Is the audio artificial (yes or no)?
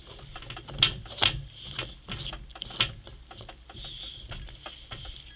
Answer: no